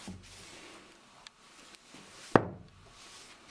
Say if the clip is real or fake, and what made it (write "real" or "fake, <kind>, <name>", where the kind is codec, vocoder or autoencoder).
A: real